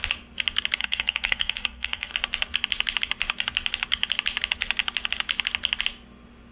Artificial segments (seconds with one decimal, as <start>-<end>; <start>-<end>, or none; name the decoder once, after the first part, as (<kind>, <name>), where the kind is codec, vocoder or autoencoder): 0.8-2.1 (codec, SNAC)

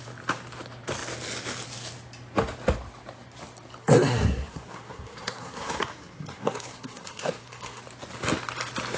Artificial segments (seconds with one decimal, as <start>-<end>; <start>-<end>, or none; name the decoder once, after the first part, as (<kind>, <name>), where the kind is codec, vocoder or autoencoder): 3.8-7.8 (codec, SNAC)

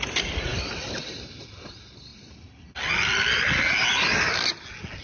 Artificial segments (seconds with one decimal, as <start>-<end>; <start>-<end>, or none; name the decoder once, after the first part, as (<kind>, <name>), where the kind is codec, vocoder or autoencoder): none

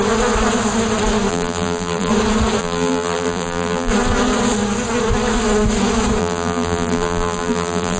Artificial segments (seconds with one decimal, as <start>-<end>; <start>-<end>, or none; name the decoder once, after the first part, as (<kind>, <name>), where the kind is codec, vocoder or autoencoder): 1.3-2.1 (vocoder, BigVGAN v2); 2.6-3.9; 6.2-8.0

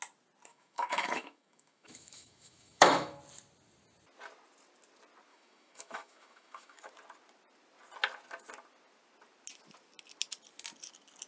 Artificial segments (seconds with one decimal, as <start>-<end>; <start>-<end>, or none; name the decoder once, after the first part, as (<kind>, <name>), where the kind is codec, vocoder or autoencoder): 0.5-3.2 (autoencoder, DAC-VAE); 5.3-6.9

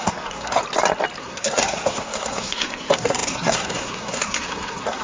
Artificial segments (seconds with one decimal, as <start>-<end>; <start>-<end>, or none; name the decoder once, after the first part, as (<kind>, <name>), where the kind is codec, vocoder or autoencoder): 0.0-0.6 (codec, SNAC); 1.2-5.0